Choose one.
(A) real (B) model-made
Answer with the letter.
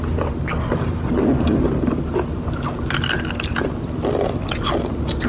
A